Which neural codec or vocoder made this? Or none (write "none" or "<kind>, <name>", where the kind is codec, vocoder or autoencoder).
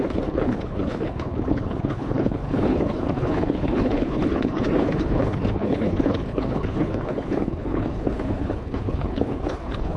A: codec, HILCodec